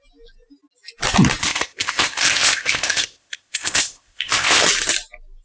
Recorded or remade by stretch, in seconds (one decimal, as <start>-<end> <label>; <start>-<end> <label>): 0.0-1.4 recorded; 1.4-4.6 remade; 4.6-5.4 recorded